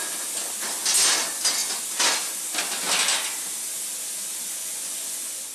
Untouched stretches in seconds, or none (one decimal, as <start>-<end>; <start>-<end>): 0.0-4.6